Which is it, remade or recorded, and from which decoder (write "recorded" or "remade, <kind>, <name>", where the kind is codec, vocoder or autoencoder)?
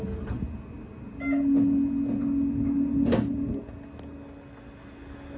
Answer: recorded